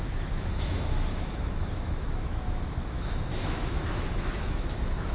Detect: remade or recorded remade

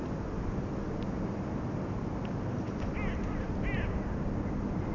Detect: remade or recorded recorded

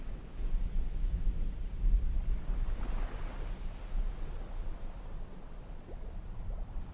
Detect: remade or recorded recorded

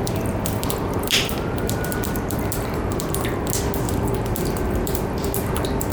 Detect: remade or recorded recorded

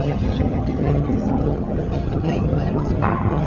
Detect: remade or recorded remade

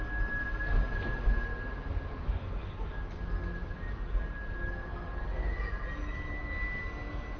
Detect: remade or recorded recorded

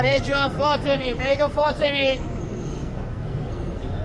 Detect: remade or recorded remade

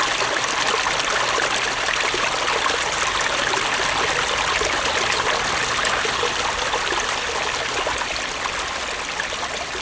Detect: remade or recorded recorded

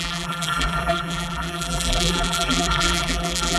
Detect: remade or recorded remade